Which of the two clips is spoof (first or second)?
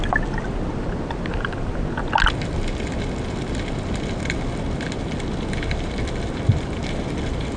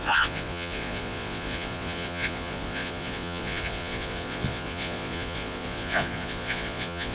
second